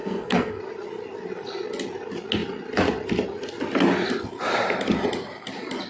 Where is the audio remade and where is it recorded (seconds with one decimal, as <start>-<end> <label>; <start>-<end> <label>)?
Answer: 0.0-0.6 remade; 0.6-5.9 recorded